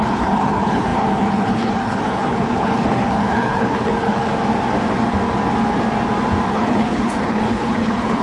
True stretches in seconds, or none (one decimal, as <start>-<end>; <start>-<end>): 4.3-6.5